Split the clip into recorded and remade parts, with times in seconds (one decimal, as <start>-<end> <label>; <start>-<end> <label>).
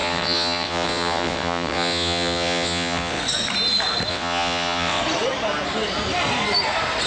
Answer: 0.0-3.2 remade; 3.2-4.1 recorded; 4.1-5.0 remade; 5.0-7.1 recorded